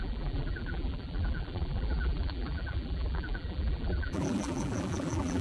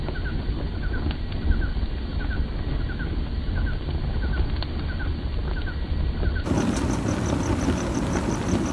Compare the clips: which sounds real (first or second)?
second